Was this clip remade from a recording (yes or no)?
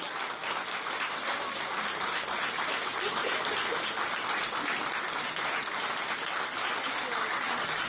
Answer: no